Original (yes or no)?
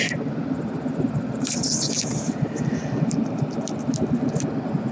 yes